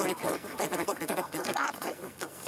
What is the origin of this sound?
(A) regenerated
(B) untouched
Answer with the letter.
A